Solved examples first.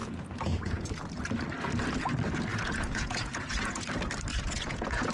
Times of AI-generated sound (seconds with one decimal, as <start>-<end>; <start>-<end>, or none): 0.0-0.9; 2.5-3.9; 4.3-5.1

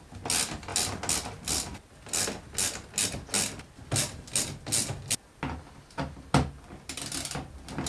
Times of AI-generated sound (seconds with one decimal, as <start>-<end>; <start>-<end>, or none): none

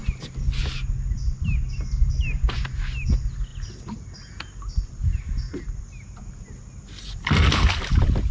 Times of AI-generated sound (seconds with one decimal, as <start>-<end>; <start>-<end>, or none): none